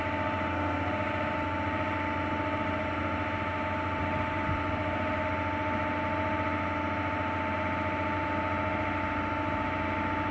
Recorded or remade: recorded